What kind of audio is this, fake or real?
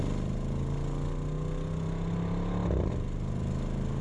real